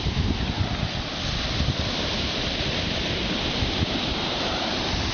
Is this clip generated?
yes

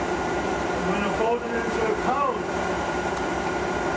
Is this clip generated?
yes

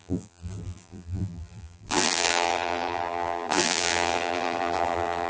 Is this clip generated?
yes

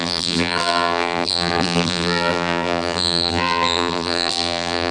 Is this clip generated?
yes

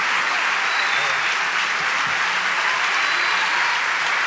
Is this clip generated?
no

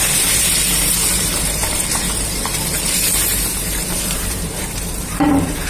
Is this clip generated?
yes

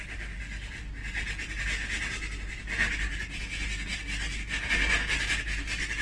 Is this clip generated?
no